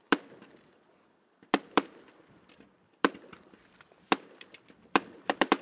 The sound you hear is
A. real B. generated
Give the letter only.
B